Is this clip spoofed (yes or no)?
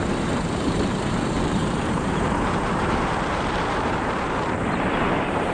yes